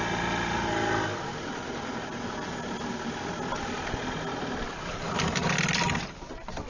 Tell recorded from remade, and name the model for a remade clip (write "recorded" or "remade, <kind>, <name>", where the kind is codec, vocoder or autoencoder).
recorded